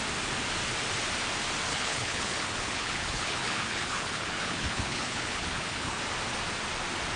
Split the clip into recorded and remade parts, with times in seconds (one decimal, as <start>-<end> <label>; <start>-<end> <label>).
0.0-1.7 recorded; 1.7-6.0 remade; 6.0-7.2 recorded